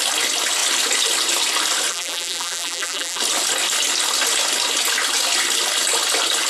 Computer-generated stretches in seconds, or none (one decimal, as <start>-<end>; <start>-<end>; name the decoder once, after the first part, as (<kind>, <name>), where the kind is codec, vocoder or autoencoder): 1.9-3.2 (vocoder, BigVGAN v2)